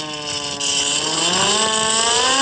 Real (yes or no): yes